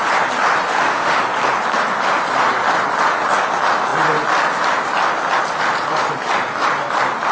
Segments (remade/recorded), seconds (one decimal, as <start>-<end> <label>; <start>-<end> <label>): 0.0-0.7 recorded; 0.7-1.2 remade; 1.2-7.3 recorded